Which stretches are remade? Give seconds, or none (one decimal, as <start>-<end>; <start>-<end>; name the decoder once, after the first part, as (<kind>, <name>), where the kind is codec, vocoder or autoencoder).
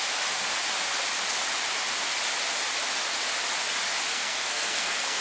4.1-5.2 (codec, SNAC)